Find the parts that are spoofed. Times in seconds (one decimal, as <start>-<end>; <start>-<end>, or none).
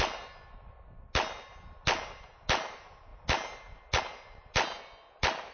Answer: none